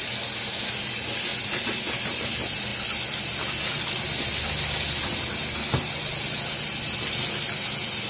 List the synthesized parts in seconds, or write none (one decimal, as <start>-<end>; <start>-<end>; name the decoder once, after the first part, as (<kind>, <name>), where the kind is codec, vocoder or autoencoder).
none